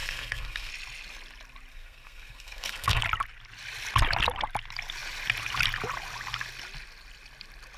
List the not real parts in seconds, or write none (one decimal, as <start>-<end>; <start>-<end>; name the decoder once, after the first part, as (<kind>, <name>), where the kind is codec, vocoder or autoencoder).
0.0-0.7 (codec, SNAC); 1.7-3.0

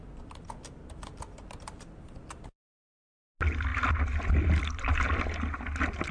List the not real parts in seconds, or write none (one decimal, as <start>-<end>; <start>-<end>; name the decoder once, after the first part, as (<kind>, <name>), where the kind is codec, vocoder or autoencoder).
none

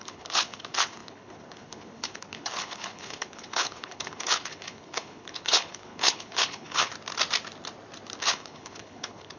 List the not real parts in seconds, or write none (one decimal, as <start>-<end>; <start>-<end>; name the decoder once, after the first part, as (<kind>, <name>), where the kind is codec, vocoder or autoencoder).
0.0-6.9 (codec, HILCodec); 8.2-9.4

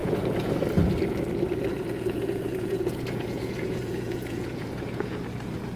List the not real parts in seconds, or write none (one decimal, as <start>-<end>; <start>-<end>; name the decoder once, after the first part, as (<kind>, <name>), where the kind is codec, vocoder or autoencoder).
0.0-0.5 (vocoder, Vocos); 1.7-5.2

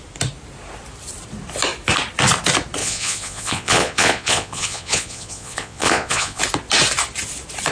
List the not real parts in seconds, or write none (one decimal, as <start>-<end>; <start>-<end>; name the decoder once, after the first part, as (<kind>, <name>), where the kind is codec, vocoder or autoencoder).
2.8-6.4 (vocoder, Vocos)

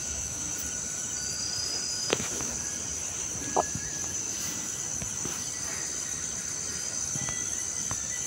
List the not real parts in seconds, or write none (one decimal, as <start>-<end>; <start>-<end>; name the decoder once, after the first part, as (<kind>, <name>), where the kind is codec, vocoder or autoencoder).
0.0-0.5 (autoencoder, DAC-VAE); 1.9-2.5